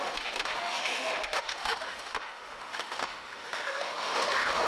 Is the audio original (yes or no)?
no